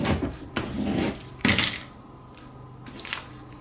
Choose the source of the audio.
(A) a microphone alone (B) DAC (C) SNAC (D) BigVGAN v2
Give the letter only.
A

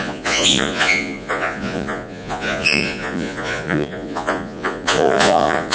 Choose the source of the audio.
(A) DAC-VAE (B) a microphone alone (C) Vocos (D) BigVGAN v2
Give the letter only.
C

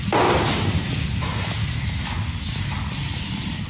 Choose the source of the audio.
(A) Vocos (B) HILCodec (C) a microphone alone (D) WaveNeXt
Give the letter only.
C